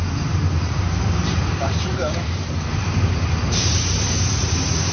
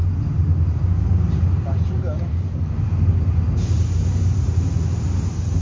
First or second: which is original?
second